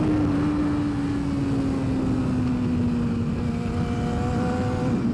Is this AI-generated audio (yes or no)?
no